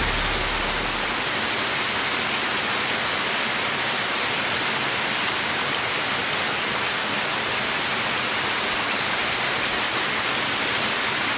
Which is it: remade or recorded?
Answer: recorded